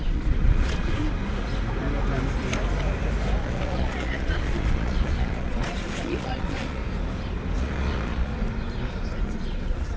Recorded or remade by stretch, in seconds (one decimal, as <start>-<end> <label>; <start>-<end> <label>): 0.0-1.0 remade; 1.0-3.4 recorded; 3.4-6.8 remade; 6.8-7.6 recorded; 7.6-8.3 remade; 8.3-9.2 recorded; 9.2-10.0 remade